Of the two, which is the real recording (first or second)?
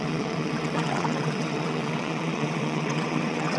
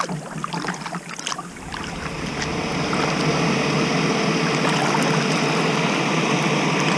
second